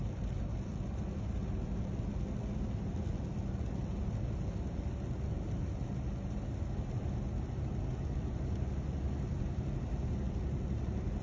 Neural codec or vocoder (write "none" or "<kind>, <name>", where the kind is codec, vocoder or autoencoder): none